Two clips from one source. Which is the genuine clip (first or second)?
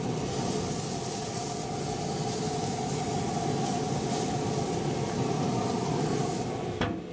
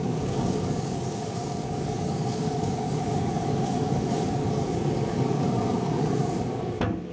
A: first